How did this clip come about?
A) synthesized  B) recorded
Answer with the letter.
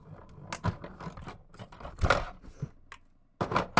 B